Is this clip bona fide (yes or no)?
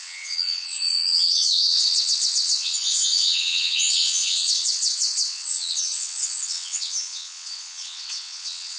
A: no